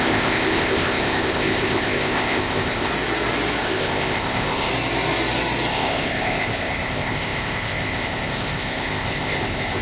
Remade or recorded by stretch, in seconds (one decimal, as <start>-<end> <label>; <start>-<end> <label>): 0.0-2.9 remade; 2.9-3.6 recorded; 3.6-4.7 remade; 4.7-5.7 recorded; 5.7-9.8 remade